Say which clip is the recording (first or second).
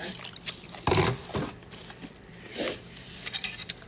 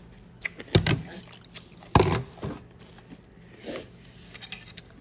second